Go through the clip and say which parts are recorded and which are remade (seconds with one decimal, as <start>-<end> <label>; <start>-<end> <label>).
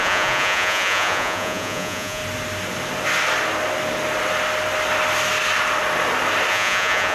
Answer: 0.0-2.2 remade; 2.2-6.5 recorded; 6.5-7.1 remade